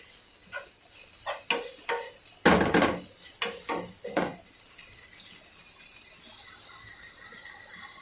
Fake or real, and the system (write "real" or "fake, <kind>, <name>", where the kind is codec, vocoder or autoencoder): real